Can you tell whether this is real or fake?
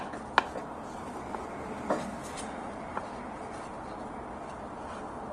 real